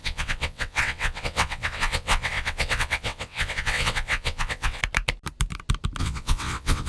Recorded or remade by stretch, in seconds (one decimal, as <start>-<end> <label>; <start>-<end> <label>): 0.0-4.8 remade; 4.8-6.0 recorded; 6.0-6.9 remade